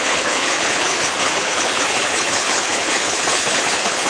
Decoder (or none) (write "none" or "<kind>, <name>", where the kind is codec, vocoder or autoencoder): codec, HILCodec